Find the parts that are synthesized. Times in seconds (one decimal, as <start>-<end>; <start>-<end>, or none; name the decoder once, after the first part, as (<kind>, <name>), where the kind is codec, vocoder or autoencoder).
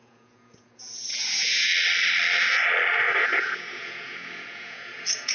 0.0-1.7 (vocoder, Vocos); 3.2-5.3